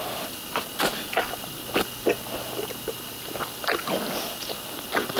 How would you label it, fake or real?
real